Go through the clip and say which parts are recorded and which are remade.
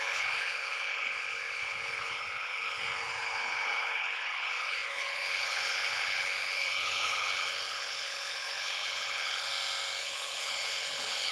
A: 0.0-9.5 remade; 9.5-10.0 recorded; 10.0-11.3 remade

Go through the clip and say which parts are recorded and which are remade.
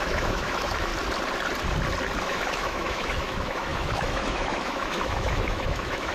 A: 0.0-0.9 remade; 0.9-2.2 recorded; 2.2-6.1 remade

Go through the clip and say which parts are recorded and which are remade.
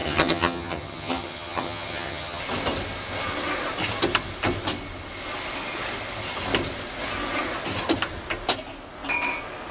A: 0.0-2.4 remade; 2.4-9.7 recorded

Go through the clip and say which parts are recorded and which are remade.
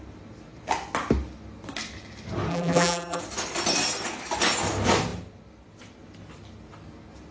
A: 0.0-2.5 recorded; 2.5-3.2 remade; 3.2-7.3 recorded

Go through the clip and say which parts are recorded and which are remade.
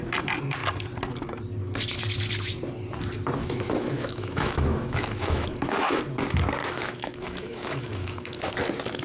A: 0.0-3.4 recorded; 3.4-6.0 remade; 6.0-6.6 recorded; 6.6-8.5 remade; 8.5-9.0 recorded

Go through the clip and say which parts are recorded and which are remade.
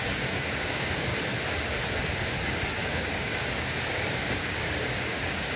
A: 0.0-1.1 remade; 1.1-2.6 recorded; 2.6-5.6 remade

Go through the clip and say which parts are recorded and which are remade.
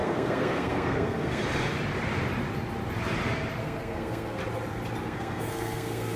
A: 0.0-1.4 remade; 1.4-3.6 recorded; 3.6-4.4 remade; 4.4-5.0 recorded; 5.0-6.2 remade